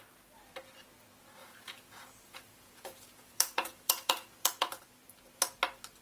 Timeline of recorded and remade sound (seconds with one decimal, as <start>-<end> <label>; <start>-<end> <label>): 0.0-1.4 recorded; 1.4-4.8 remade; 4.8-6.0 recorded